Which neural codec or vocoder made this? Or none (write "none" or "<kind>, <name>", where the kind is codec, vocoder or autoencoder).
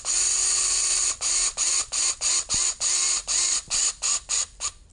none